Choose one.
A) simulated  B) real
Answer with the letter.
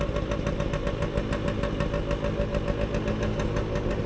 B